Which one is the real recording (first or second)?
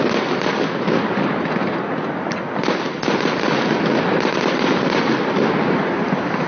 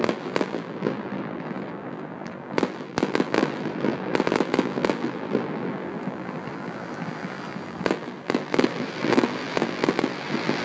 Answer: first